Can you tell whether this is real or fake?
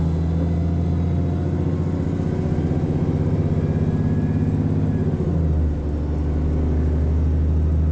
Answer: real